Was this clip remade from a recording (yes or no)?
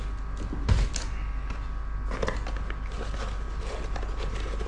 no